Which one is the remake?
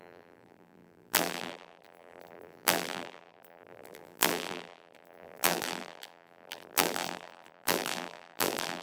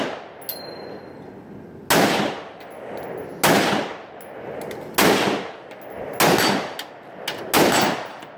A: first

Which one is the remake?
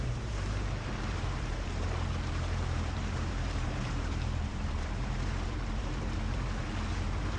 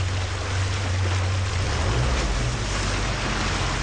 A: first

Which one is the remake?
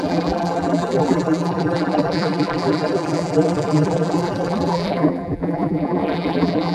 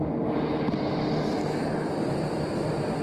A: first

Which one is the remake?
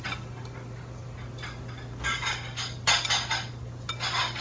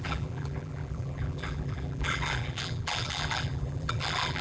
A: second